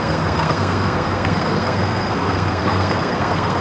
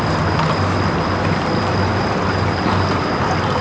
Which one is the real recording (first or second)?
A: second